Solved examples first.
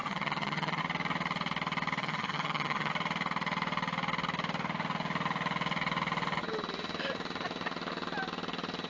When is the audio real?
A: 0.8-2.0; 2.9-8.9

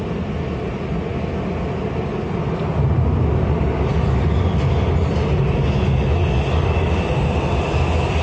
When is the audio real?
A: 0.0-8.2

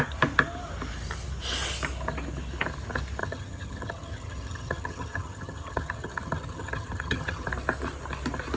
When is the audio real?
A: 0.0-3.2; 7.5-8.6

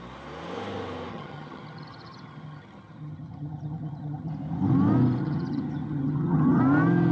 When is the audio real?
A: 0.0-1.1; 4.3-5.2; 6.6-7.1